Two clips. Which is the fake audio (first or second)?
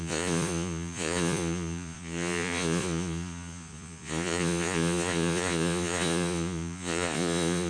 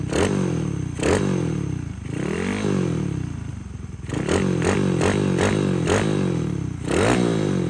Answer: first